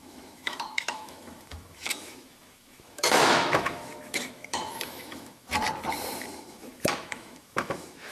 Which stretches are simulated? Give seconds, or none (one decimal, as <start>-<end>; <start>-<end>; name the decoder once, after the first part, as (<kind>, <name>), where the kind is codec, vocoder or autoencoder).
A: 0.0-5.5 (autoencoder, DAC-VAE); 6.2-8.1